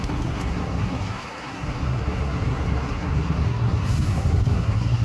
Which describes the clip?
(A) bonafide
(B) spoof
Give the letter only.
B